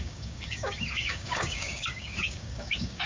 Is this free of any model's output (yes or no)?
no